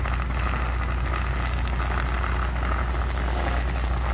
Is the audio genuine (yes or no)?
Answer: yes